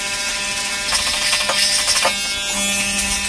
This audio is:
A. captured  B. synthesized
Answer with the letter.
A